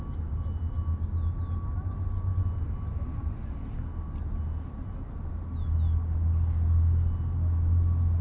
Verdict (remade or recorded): recorded